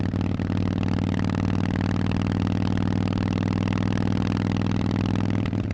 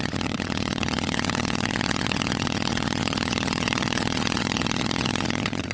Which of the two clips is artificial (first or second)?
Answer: second